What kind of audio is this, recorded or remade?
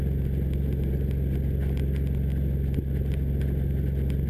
recorded